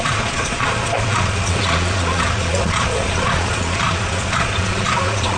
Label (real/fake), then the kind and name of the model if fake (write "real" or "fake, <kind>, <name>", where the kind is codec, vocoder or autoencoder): fake, vocoder, Vocos